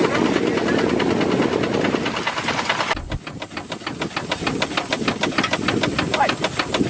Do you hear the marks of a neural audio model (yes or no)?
no